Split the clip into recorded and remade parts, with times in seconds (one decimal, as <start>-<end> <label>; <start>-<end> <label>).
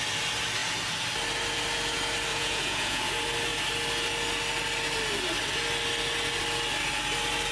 0.0-2.3 recorded; 2.3-3.0 remade; 3.0-7.5 recorded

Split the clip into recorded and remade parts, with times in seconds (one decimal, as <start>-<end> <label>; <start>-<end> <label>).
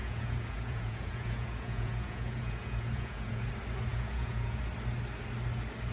0.0-3.5 remade; 3.5-3.9 recorded; 3.9-4.6 remade; 4.6-5.9 recorded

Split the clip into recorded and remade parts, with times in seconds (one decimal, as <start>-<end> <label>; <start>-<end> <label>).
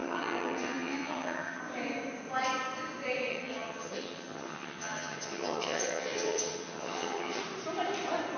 0.0-1.6 remade; 1.6-3.3 recorded; 3.3-7.4 remade; 7.4-8.4 recorded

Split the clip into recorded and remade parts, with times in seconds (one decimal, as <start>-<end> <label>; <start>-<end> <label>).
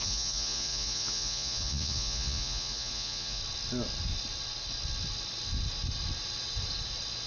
0.0-3.4 remade; 3.4-7.3 recorded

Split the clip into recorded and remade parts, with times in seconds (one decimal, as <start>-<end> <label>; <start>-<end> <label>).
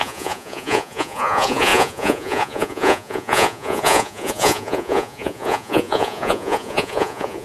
0.0-7.4 remade